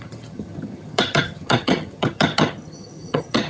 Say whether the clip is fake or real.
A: fake